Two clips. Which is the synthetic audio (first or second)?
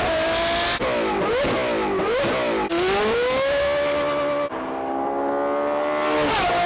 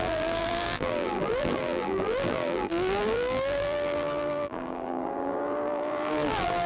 second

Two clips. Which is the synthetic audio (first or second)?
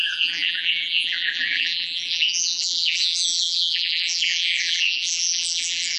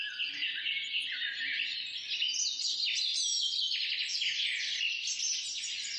first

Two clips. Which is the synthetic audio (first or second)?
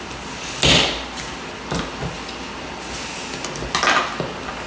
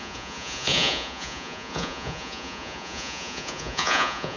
second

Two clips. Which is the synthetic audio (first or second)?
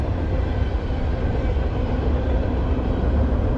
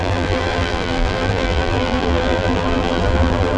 second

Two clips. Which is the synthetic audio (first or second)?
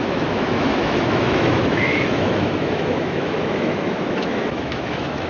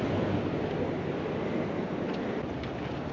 first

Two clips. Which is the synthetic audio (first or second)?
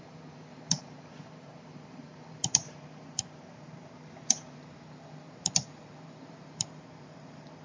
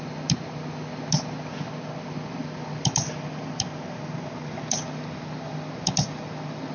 first